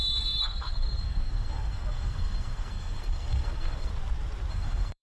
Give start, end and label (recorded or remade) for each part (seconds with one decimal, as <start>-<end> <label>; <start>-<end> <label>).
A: 0.0-3.9 remade; 3.9-4.5 recorded; 4.5-5.0 remade

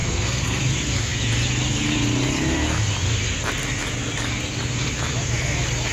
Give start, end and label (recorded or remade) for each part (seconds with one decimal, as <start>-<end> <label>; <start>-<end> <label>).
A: 0.0-0.6 remade; 0.6-5.9 recorded

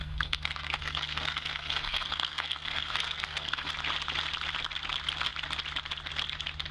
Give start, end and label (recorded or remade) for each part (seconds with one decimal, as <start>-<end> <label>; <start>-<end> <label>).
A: 0.0-3.7 remade; 3.7-6.7 recorded

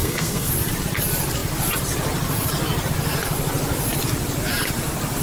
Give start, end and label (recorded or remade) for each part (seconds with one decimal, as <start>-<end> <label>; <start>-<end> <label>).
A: 0.0-0.5 remade; 0.5-5.2 recorded

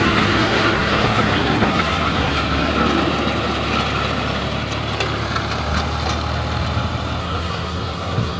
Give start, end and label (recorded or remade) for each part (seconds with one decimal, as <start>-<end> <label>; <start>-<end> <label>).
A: 0.0-2.7 remade; 2.7-7.2 recorded; 7.2-8.4 remade

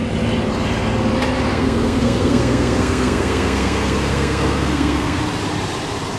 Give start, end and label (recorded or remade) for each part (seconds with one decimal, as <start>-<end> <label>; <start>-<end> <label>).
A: 0.0-1.5 recorded; 1.5-5.2 remade; 5.2-6.2 recorded